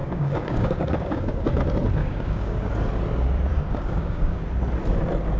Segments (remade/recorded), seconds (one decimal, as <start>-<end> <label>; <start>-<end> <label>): 0.0-1.6 remade; 1.6-2.0 recorded; 2.0-2.7 remade; 2.7-3.5 recorded; 3.5-4.4 remade; 4.4-5.4 recorded